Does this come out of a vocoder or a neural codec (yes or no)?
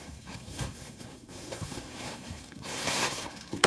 yes